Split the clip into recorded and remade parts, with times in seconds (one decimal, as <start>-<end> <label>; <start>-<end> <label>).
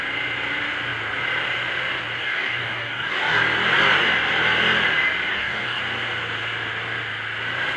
0.0-2.2 recorded; 2.2-3.4 remade; 3.4-5.3 recorded; 5.3-5.8 remade; 5.8-7.8 recorded